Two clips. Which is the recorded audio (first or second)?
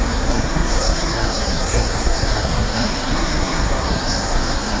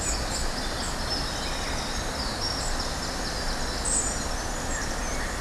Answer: second